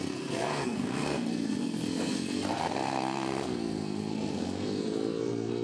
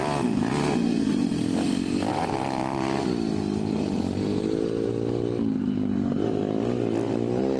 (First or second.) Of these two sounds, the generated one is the first